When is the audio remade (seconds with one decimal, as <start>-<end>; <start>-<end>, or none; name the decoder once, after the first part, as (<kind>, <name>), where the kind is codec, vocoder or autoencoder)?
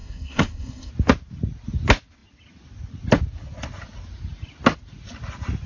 0.0-0.9 (codec, SNAC)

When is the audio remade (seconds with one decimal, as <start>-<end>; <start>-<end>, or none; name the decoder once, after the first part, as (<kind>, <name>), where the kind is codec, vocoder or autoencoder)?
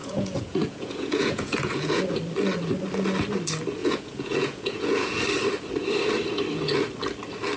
0.0-2.0 (vocoder, Vocos); 3.8-5.2